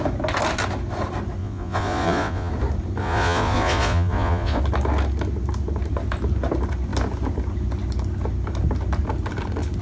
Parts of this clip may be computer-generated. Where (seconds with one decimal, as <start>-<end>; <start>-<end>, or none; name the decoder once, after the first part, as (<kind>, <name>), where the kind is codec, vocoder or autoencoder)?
1.4-2.5 (vocoder, Vocos); 3.0-4.6